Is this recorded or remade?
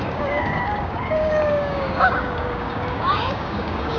remade